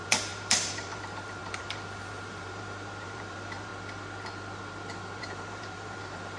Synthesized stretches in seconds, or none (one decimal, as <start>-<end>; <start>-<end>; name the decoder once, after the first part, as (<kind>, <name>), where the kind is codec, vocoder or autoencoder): 0.0-3.7 (vocoder, BigVGAN v2); 5.2-6.4